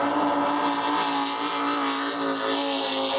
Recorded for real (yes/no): yes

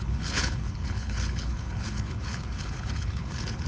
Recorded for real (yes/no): no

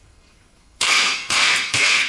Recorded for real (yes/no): no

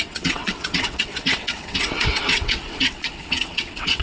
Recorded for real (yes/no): no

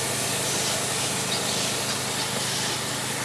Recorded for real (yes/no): yes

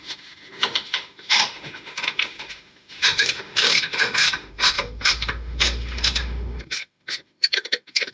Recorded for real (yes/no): no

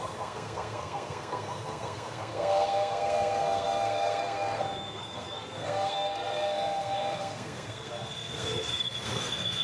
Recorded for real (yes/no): no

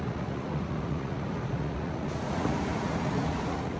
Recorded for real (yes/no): no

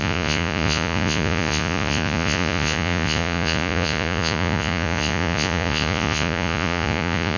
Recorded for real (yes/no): no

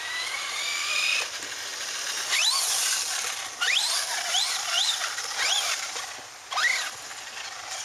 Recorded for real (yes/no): no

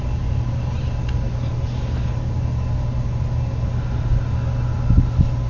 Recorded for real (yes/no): yes